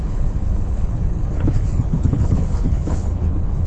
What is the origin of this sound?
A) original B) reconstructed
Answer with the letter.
B